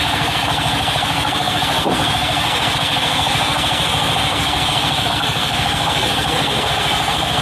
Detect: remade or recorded remade